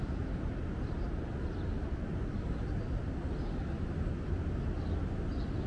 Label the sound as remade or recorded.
recorded